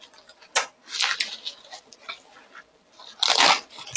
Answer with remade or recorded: recorded